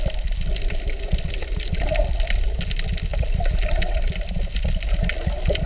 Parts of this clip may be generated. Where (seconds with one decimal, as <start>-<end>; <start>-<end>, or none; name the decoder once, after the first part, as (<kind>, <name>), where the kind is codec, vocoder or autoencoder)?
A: none